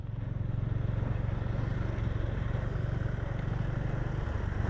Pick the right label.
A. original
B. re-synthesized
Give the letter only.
A